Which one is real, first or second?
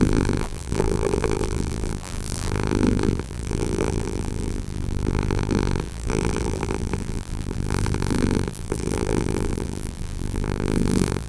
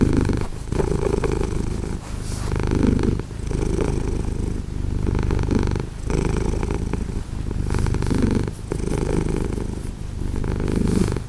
second